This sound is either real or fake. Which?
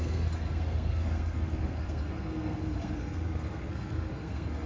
fake